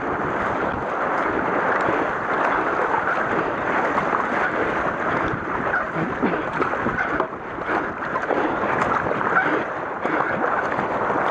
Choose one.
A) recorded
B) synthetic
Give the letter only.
A